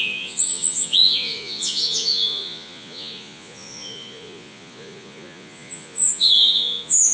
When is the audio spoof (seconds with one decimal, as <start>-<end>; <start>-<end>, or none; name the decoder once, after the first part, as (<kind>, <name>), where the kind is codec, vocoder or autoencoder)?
0.0-7.1 (vocoder, Vocos)